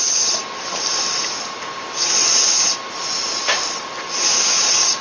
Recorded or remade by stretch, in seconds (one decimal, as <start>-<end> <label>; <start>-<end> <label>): 0.0-4.3 recorded; 4.3-5.0 remade